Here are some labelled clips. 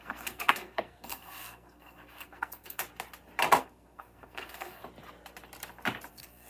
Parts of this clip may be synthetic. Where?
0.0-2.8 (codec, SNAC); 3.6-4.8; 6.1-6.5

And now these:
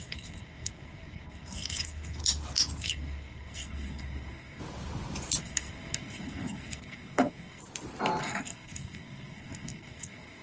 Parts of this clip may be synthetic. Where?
0.0-2.2 (codec, SNAC); 2.8-4.6; 5.4-7.6; 8.2-10.4

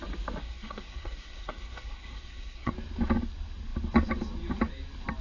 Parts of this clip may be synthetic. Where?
0.4-2.7 (codec, SNAC)

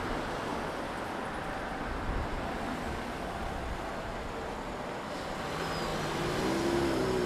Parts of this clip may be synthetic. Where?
none